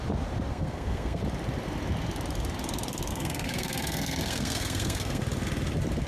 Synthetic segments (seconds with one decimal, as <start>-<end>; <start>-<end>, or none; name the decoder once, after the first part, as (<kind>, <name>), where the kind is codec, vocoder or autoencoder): 0.5-1.2 (codec, SNAC); 3.1-5.2